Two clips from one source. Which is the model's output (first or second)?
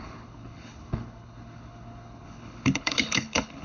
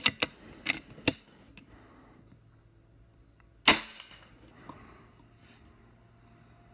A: first